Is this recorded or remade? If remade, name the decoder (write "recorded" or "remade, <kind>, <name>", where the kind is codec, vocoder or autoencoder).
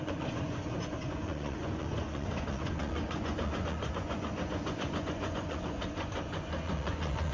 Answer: remade, vocoder, Vocos